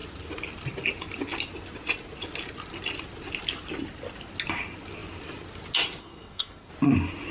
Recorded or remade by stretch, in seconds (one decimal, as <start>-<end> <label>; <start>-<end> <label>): 0.0-6.0 recorded; 6.0-6.7 remade; 6.7-7.3 recorded